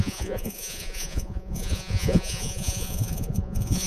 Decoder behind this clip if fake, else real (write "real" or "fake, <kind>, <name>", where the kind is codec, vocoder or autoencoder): fake, vocoder, Vocos